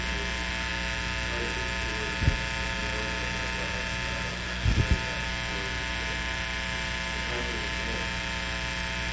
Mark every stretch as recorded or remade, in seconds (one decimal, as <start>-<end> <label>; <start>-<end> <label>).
0.0-4.3 recorded; 4.3-4.8 remade; 4.8-9.1 recorded